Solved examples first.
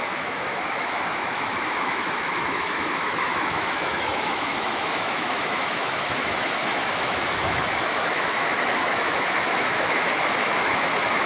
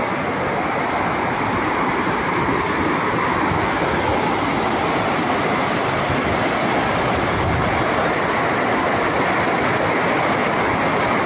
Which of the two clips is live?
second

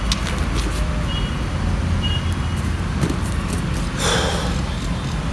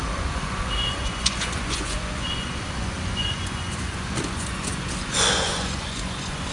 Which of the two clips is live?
first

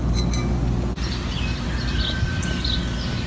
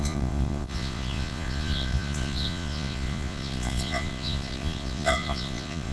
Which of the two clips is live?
first